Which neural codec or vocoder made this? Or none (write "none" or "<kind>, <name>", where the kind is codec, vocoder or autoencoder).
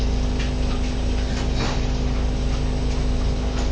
none